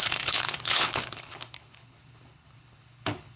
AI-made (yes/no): yes